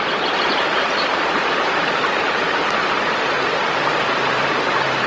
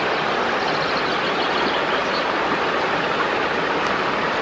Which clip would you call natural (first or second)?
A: second